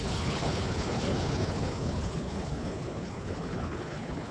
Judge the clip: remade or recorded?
remade